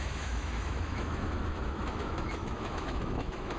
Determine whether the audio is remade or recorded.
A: remade